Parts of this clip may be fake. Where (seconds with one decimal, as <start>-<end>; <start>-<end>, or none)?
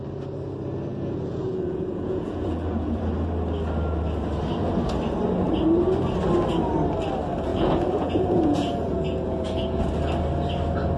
0.9-3.0; 7.5-9.8